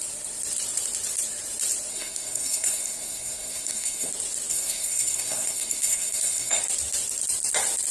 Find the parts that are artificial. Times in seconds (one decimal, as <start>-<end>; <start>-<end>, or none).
1.9-4.1; 4.5-6.6